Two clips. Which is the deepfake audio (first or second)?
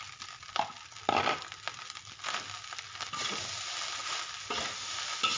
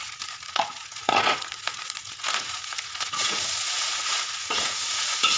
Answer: second